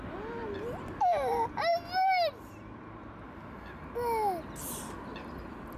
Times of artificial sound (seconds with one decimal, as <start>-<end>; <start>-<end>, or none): none